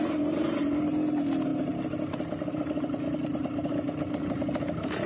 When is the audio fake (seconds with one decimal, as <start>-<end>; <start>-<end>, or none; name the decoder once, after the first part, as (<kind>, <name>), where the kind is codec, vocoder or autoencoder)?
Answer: none